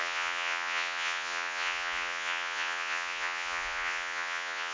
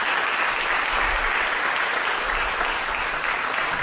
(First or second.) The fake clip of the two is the first